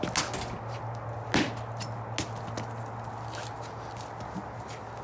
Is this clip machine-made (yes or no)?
no